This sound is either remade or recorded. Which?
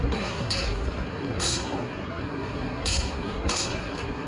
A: remade